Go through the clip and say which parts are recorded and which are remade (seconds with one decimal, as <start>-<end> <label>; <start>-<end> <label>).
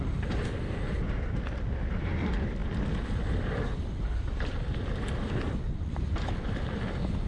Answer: 0.0-7.3 remade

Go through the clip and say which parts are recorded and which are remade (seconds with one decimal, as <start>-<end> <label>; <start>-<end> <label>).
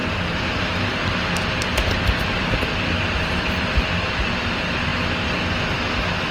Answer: 0.0-3.8 remade; 3.8-6.3 recorded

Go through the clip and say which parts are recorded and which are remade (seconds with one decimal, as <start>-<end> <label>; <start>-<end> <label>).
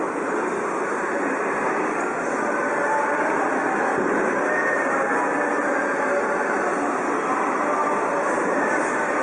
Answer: 0.0-9.2 recorded